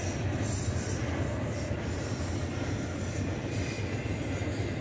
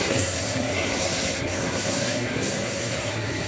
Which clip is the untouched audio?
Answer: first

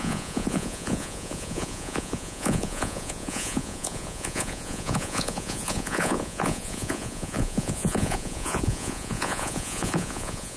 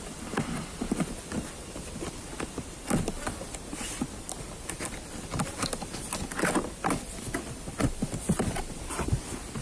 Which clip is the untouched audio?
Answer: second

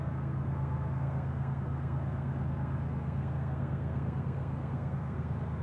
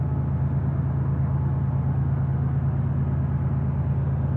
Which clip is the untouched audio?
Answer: second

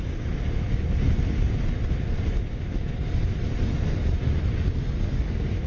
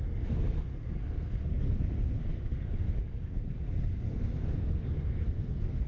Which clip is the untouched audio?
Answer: first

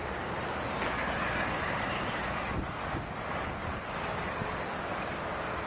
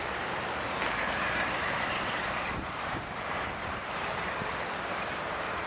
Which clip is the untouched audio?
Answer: first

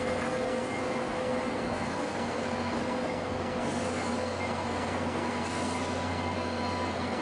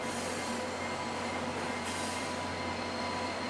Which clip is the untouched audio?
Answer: second